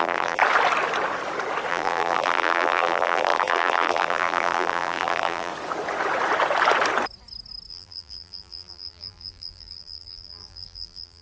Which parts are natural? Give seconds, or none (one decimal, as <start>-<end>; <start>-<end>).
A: 0.4-1.7; 5.5-7.7